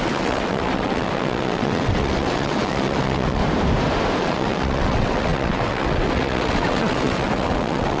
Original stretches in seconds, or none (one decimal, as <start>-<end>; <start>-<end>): 3.4-4.2